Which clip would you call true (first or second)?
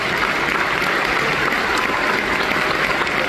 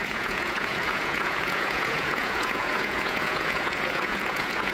first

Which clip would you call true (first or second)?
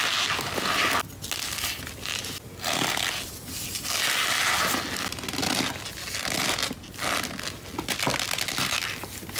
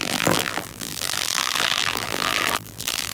first